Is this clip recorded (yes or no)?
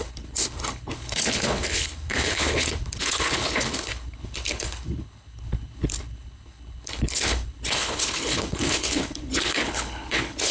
no